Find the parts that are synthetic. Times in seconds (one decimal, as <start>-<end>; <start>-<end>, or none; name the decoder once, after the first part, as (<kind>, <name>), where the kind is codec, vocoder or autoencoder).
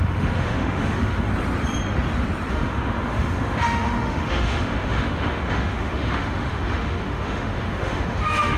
0.0-1.3 (autoencoder, DAC-VAE); 2.5-8.6